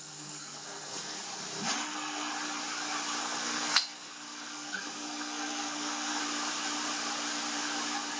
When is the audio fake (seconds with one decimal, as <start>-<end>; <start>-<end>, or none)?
0.0-1.2; 1.8-2.3; 3.2-6.2